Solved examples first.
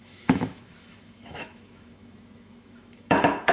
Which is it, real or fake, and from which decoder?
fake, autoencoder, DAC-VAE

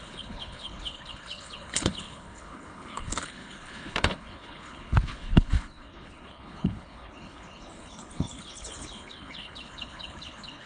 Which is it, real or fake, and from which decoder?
fake, codec, HILCodec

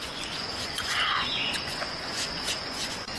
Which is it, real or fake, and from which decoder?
fake, vocoder, Vocos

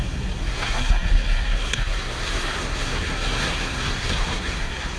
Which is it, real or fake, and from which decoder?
fake, codec, SNAC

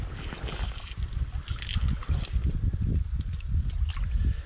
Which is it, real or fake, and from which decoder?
real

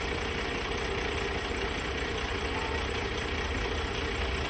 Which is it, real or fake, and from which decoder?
real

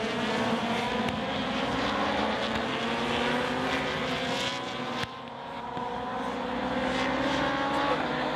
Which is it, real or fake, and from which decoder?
real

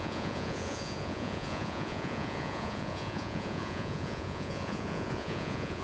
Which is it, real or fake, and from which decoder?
fake, vocoder, Vocos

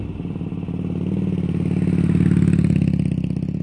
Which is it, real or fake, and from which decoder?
real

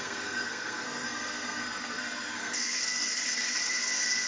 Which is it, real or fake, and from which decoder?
fake, codec, SNAC